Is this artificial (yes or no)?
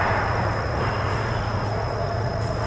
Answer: yes